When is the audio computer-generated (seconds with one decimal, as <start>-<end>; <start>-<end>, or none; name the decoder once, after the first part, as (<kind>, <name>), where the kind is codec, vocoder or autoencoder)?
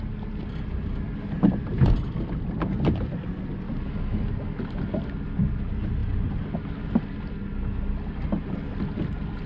none